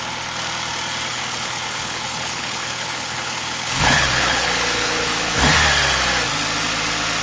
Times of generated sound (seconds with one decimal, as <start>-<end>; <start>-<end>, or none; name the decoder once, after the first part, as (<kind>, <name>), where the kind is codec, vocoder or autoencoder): 1.1-5.4 (codec, HILCodec)